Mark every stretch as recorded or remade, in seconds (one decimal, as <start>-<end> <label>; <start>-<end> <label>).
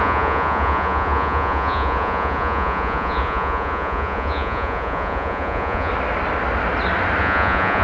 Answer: 0.0-5.9 remade; 5.9-7.2 recorded; 7.2-7.8 remade